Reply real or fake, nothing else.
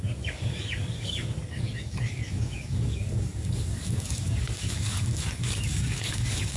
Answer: fake